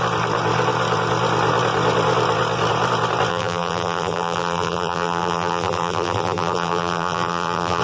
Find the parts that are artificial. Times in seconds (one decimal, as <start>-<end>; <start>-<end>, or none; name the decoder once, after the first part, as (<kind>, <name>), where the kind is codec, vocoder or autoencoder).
3.3-7.8 (vocoder, BigVGAN v2)